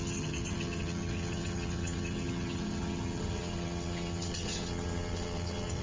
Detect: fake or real fake